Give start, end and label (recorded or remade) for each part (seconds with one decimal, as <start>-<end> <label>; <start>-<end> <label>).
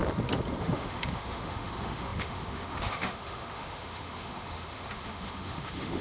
0.0-0.6 recorded; 0.6-6.0 remade